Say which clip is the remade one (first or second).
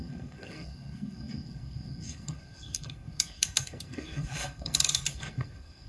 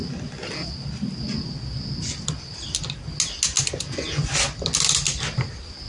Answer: first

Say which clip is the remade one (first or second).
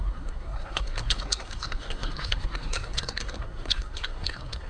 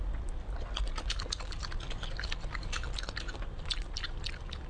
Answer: first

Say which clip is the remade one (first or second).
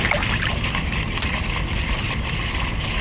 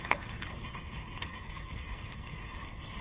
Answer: second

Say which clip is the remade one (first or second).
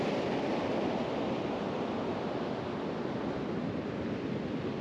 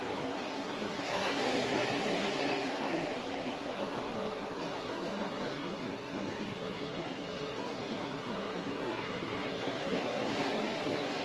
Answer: second